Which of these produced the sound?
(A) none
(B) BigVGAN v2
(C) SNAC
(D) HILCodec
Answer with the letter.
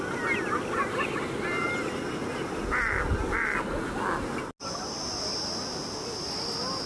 A